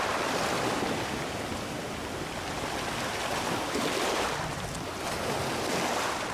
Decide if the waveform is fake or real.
fake